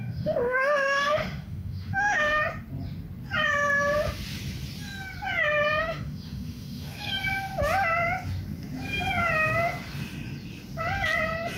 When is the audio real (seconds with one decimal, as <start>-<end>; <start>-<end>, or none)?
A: 2.4-5.8; 7.2-11.6